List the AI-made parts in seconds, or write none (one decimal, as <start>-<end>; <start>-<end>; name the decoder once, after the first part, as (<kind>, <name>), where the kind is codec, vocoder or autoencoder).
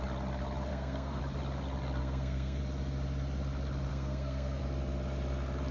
0.7-1.2 (codec, SNAC); 2.0-2.6; 3.9-4.6